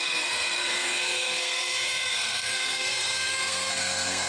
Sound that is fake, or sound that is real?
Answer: fake